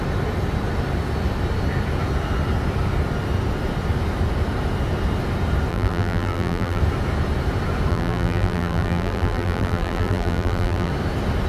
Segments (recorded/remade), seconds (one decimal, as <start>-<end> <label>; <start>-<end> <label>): 0.0-5.7 recorded; 5.7-6.8 remade; 6.8-7.9 recorded; 7.9-10.9 remade; 10.9-11.5 recorded